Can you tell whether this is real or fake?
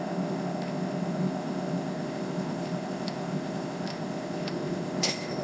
fake